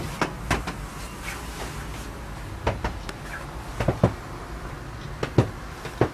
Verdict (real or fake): real